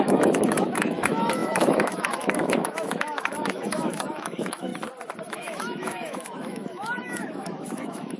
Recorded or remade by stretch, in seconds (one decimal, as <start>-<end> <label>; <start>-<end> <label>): 0.0-4.7 remade; 4.7-5.3 recorded; 5.3-8.2 remade

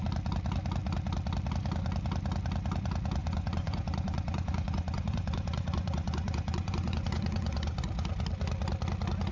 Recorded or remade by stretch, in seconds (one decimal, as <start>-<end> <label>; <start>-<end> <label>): 0.0-3.2 recorded; 3.2-7.8 remade; 7.8-9.3 recorded